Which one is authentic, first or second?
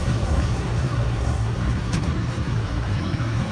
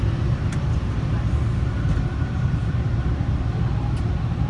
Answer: second